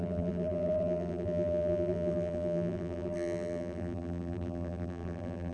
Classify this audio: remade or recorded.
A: remade